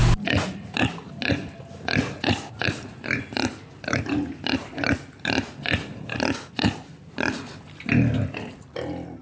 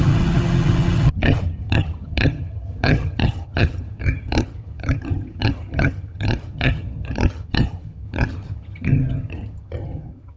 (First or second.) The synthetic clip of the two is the second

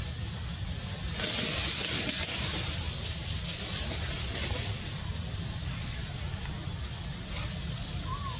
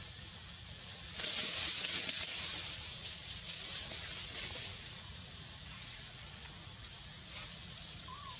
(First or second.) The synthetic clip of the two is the second